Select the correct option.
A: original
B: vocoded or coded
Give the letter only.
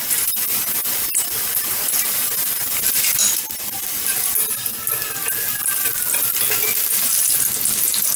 A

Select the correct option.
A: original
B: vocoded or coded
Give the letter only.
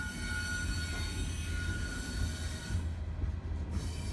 A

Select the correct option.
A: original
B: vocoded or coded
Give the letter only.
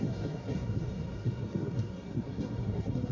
B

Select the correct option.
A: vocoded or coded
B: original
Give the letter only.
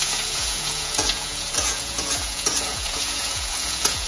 A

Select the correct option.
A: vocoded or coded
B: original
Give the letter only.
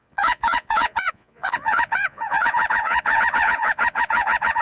A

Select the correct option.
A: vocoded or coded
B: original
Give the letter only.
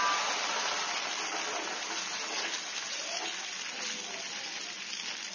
B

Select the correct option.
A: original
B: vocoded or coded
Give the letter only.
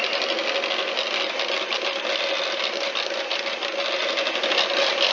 A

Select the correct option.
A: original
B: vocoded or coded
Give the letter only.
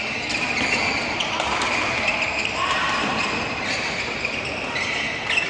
A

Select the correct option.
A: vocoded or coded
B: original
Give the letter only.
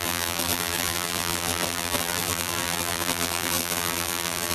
A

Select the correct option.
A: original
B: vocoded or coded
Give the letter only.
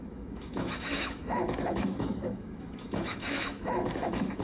B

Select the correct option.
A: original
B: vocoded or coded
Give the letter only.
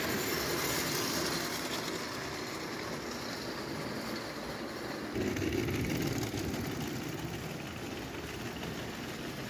A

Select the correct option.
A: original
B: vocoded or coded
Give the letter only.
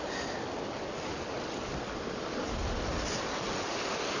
A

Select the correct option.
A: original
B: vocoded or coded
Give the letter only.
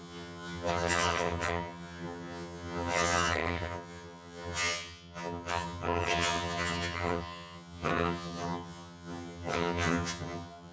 B